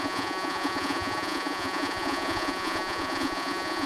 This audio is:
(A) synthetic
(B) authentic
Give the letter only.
A